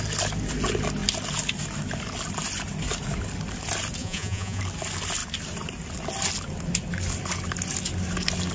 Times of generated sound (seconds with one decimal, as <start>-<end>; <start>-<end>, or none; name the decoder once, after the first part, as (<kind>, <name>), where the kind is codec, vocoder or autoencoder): 4.0-4.6 (vocoder, Vocos)